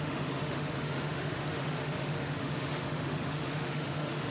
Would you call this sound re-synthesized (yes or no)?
yes